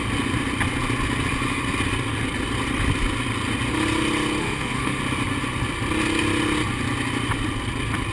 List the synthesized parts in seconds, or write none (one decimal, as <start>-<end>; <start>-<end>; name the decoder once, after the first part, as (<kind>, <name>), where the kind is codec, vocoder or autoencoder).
4.4-5.0 (autoencoder, DAC-VAE)